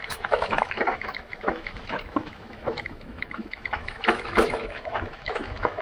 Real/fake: fake